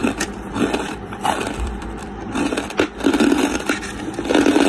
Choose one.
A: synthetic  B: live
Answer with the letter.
A